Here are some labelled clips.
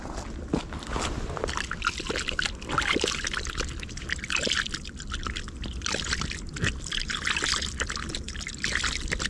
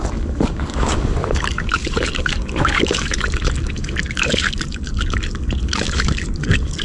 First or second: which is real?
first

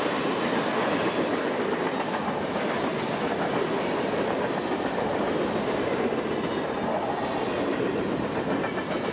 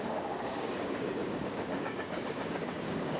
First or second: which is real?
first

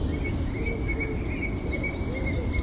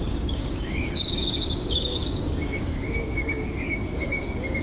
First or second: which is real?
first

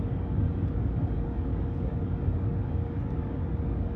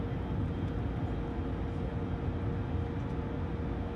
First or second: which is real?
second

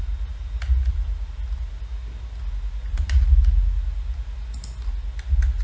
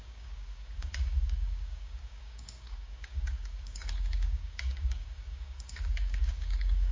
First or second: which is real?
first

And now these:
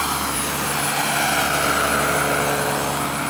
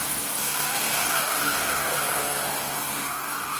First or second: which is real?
first